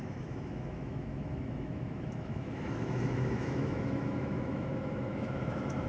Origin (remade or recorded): remade